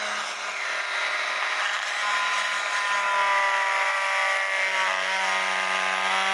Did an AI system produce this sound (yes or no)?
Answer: no